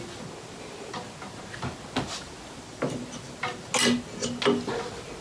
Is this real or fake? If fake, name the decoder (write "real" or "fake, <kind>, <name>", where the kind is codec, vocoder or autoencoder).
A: real